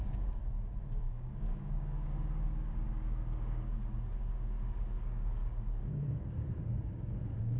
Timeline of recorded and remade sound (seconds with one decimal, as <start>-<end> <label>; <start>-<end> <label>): 0.0-0.4 remade; 0.4-1.0 recorded; 1.0-7.6 remade